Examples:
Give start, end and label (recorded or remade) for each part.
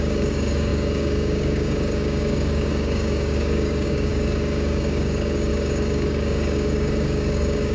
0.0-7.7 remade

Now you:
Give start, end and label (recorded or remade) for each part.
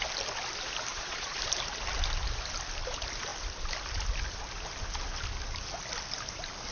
0.0-0.9 recorded; 0.9-1.4 remade; 1.4-6.7 recorded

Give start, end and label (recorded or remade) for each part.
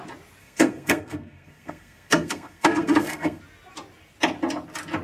0.0-0.4 recorded; 0.4-3.4 remade; 3.4-5.0 recorded